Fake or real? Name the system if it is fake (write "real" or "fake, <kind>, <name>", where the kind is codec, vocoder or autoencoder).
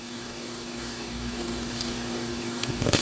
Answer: fake, codec, DAC